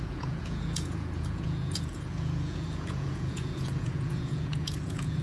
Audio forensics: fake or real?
fake